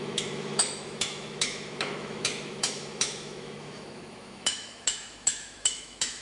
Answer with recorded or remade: remade